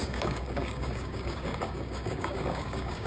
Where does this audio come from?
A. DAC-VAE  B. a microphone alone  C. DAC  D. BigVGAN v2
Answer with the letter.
C